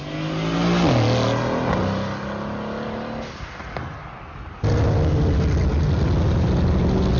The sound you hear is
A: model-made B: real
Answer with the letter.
B